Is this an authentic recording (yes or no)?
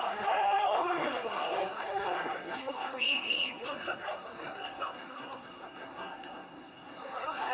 no